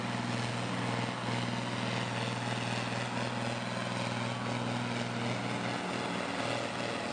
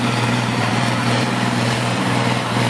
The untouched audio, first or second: first